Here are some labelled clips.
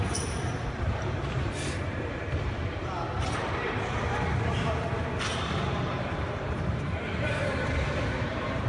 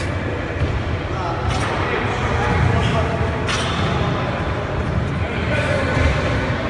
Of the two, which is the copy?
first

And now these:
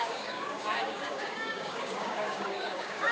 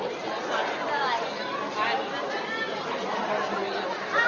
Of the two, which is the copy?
first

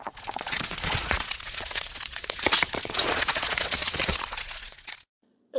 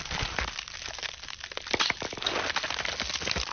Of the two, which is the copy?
first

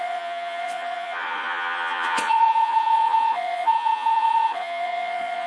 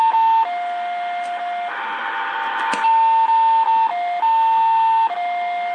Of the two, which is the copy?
first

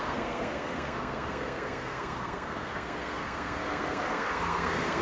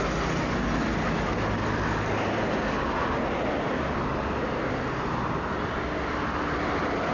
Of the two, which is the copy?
first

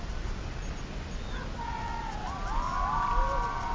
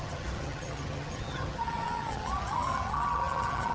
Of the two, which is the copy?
second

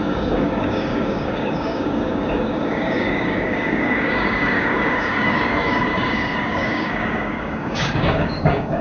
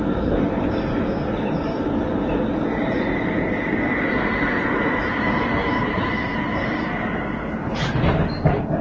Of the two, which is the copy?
first